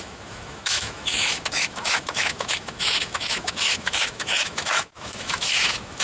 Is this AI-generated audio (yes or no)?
yes